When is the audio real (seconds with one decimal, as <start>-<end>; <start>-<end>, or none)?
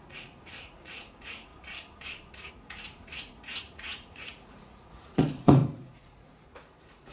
1.5-2.5